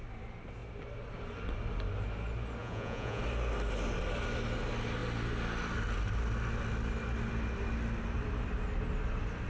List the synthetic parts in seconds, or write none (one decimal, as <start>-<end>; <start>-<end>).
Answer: 2.6-3.2